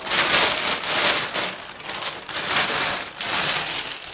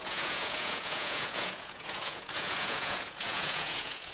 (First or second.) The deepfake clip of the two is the second